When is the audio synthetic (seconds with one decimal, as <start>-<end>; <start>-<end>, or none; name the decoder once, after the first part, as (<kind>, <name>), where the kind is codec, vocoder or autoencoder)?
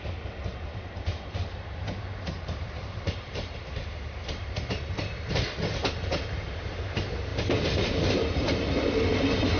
0.5-5.4 (vocoder, BigVGAN v2)